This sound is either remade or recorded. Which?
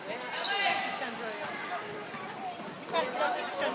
recorded